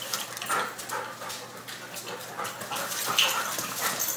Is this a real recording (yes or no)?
yes